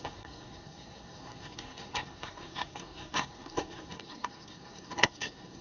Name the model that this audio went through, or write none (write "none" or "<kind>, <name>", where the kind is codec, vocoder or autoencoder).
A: codec, SNAC